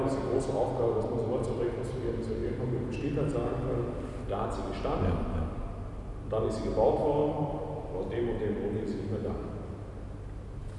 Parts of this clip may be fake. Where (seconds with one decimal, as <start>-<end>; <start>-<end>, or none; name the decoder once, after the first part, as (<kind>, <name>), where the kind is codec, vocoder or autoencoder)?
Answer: 2.4-3.1 (vocoder, BigVGAN v2); 7.2-7.8; 9.2-9.7

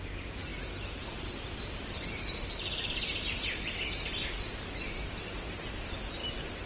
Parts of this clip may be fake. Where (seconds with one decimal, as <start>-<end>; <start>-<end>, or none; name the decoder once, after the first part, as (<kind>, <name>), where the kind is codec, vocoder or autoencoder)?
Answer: none

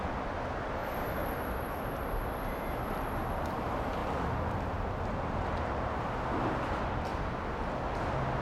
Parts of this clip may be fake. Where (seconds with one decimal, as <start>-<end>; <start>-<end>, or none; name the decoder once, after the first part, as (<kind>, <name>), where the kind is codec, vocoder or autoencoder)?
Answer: 0.8-2.1 (vocoder, BigVGAN v2)

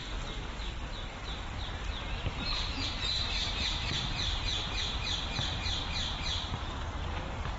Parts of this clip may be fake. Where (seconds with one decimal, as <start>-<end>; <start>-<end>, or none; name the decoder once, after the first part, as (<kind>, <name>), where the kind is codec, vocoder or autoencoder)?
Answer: 0.8-7.6 (vocoder, BigVGAN v2)

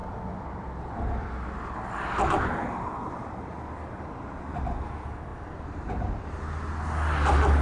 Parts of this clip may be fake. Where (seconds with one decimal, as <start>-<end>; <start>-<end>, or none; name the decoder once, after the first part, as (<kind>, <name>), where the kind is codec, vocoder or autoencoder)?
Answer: 5.3-6.4 (vocoder, BigVGAN v2)

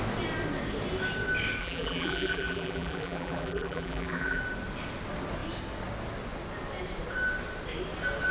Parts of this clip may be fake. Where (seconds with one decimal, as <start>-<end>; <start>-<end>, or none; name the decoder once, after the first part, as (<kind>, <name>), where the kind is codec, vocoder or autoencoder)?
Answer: 1.6-4.4 (vocoder, BigVGAN v2)

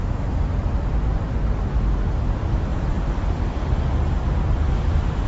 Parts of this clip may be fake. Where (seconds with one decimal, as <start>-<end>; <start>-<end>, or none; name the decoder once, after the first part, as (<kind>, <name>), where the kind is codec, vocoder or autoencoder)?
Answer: 2.7-5.3 (vocoder, BigVGAN v2)

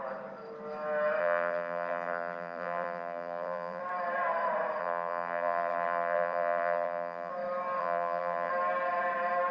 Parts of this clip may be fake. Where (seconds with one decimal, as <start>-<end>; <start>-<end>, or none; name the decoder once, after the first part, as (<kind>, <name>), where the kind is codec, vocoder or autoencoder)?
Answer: 1.2-3.8 (vocoder, BigVGAN v2); 4.8-7.3; 7.8-8.5